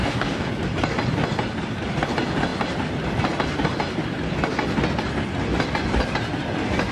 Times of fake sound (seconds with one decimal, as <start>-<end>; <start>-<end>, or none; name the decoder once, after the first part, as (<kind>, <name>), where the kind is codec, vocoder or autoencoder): 0.0-0.5 (codec, DAC)